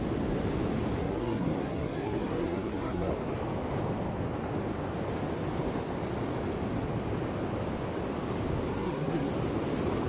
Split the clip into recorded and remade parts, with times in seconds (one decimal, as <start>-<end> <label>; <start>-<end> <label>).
0.0-1.0 recorded; 1.0-3.1 remade; 3.1-8.7 recorded; 8.7-9.3 remade; 9.3-10.1 recorded